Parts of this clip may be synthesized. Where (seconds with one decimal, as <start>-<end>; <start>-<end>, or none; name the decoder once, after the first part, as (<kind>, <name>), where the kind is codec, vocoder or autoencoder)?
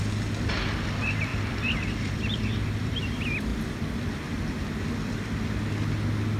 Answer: 1.3-3.0 (vocoder, BigVGAN v2); 3.5-4.4